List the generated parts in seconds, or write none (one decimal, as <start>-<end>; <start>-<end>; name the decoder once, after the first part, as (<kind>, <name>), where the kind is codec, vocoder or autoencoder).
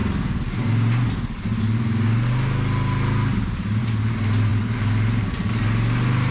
none